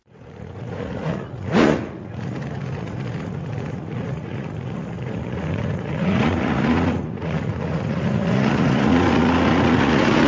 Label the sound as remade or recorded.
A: remade